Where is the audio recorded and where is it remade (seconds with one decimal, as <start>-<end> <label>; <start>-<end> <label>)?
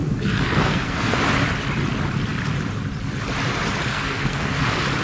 0.0-1.2 remade; 1.2-3.9 recorded; 3.9-4.6 remade; 4.6-5.0 recorded